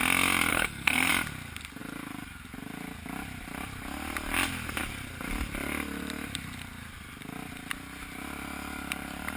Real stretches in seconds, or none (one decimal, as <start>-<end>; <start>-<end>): 0.0-0.5; 1.1-9.4